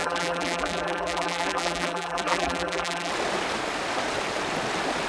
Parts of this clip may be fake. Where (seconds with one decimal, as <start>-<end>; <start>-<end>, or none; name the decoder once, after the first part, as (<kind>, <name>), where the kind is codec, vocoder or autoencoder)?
0.0-3.1 (vocoder, BigVGAN v2)

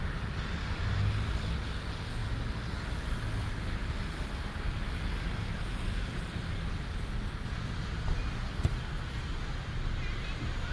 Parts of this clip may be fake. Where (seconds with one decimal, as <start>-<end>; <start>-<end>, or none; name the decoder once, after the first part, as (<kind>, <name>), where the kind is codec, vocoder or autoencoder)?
none